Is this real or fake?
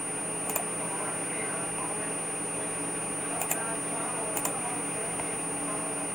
real